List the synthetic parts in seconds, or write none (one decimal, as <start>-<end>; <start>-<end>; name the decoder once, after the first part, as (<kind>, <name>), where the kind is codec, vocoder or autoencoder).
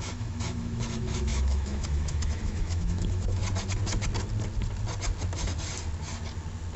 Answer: 0.0-3.4 (autoencoder, DAC-VAE)